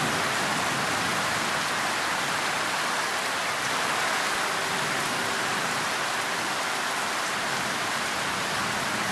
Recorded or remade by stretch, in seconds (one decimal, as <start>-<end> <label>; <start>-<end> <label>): 0.0-1.1 remade; 1.1-2.1 recorded; 2.1-9.1 remade